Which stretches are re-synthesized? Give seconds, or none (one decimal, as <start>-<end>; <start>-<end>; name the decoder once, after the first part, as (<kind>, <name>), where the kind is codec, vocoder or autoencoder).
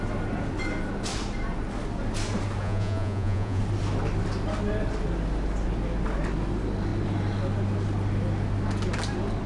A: 2.6-3.6 (vocoder, Vocos)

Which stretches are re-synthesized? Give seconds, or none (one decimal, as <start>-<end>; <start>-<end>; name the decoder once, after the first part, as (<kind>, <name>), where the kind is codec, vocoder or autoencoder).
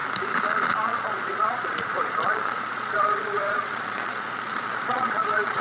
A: 0.8-5.6 (vocoder, Vocos)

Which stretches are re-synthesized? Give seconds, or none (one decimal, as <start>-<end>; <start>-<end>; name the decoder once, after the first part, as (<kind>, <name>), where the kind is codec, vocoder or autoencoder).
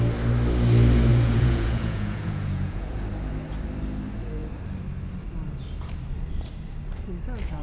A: 1.1-3.0 (vocoder, Vocos)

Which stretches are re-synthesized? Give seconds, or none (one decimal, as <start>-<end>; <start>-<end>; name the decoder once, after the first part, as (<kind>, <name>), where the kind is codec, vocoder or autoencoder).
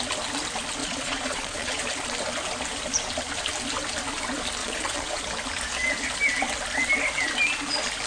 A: 0.8-1.8 (vocoder, Vocos); 4.6-5.2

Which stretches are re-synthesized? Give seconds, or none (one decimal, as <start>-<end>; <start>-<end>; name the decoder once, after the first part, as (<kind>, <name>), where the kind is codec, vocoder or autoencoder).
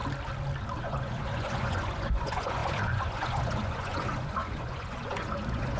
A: 0.8-5.8 (vocoder, Vocos)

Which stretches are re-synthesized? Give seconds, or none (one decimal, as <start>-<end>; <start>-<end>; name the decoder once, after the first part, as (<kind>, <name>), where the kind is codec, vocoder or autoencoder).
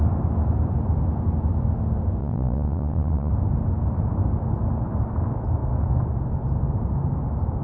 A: 2.2-3.3 (vocoder, Vocos)